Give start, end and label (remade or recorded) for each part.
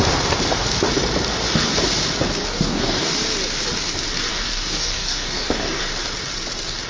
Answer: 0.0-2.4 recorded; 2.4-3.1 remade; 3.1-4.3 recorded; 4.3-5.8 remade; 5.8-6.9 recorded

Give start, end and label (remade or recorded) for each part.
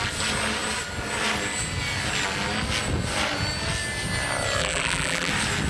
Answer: 0.0-4.6 recorded; 4.6-5.3 remade; 5.3-5.7 recorded